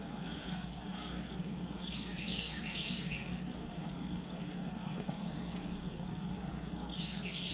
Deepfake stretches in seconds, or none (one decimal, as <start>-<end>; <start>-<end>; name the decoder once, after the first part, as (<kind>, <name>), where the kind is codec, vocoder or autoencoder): 0.0-7.5 (codec, SNAC)